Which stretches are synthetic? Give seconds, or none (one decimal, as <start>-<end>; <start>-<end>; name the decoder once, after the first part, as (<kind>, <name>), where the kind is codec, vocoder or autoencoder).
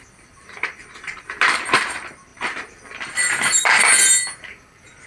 none